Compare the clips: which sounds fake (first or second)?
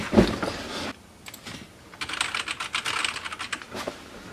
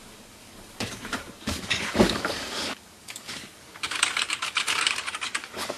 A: second